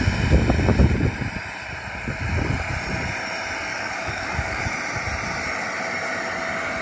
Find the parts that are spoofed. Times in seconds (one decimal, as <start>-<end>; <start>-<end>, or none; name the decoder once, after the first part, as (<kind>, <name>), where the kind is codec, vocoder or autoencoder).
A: 3.7-4.6 (codec, DAC)